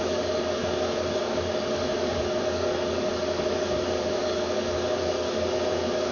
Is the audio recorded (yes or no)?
no